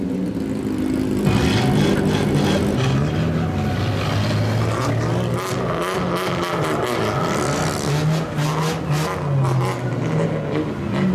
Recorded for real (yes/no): yes